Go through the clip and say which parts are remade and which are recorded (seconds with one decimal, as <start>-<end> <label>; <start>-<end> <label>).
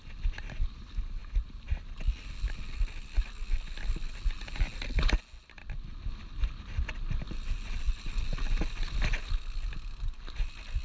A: 0.0-10.8 recorded